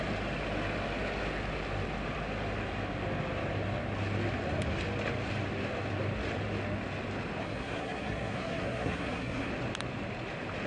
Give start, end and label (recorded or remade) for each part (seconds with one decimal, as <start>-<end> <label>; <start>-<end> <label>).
0.0-7.4 recorded; 7.4-9.5 remade; 9.5-10.7 recorded